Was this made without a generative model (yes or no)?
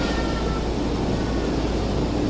yes